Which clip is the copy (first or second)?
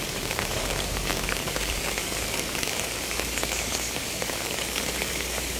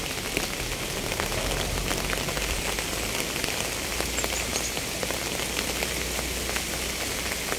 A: first